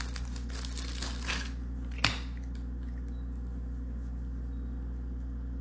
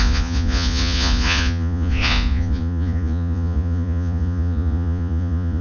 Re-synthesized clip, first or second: second